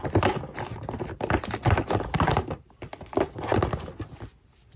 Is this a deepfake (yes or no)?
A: no